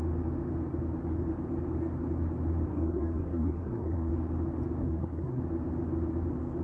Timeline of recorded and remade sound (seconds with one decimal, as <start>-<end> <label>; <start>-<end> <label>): 0.0-2.7 recorded; 2.7-4.1 remade; 4.1-4.8 recorded; 4.8-5.4 remade; 5.4-6.6 recorded